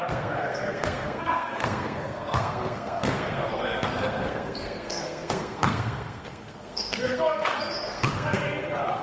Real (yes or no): no